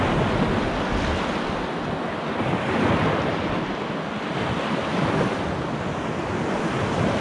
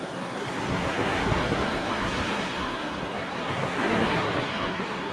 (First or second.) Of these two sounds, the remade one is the second